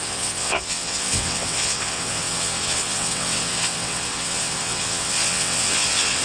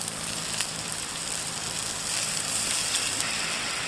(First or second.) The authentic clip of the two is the second